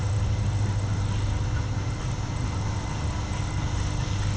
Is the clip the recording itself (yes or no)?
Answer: yes